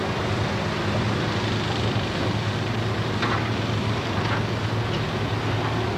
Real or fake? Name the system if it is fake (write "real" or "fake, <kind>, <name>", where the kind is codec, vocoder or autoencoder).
real